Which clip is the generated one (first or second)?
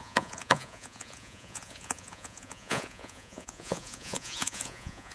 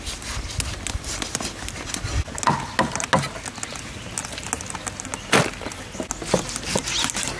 first